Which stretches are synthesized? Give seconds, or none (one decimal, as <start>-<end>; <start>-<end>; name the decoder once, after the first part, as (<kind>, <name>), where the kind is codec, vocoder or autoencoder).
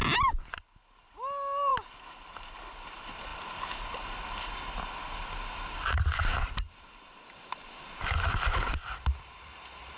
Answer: none